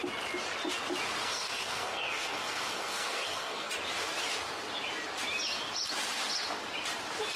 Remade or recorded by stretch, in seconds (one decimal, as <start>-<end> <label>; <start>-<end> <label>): 0.0-1.2 recorded; 1.2-3.7 remade; 3.7-7.4 recorded